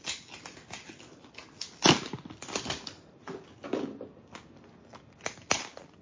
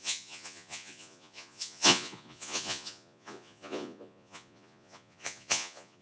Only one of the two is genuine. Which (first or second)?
first